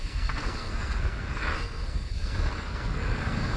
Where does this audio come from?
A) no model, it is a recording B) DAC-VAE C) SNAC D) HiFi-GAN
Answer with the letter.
C